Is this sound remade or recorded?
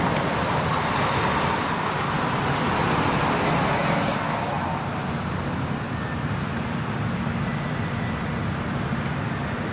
recorded